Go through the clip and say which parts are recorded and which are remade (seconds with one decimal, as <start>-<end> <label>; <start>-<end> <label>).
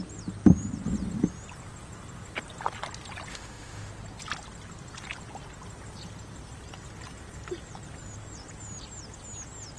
0.0-3.3 recorded; 3.3-3.9 remade; 3.9-9.8 recorded